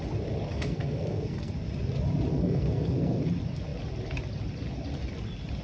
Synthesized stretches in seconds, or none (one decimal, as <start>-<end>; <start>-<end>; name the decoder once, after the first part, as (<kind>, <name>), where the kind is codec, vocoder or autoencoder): 0.5-1.5 (codec, SNAC); 2.3-3.2